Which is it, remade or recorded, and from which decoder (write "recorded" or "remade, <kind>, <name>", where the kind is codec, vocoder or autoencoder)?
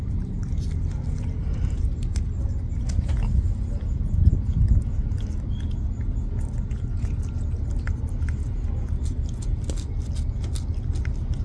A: recorded